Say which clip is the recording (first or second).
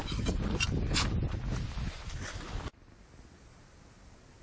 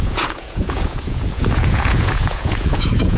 first